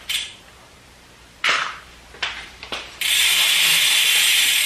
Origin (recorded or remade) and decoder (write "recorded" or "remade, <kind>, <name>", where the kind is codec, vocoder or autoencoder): remade, vocoder, BigVGAN v2